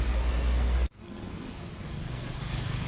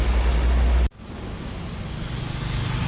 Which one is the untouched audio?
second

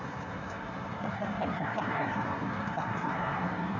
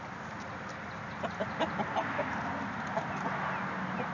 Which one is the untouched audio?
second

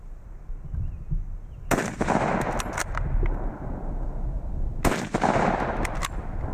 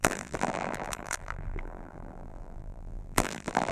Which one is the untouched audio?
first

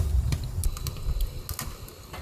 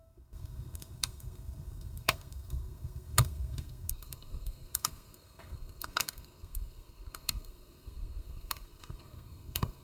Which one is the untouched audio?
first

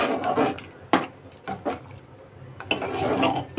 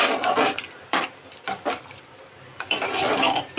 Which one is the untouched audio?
first